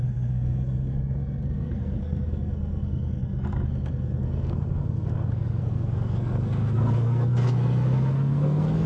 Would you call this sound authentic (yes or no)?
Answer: no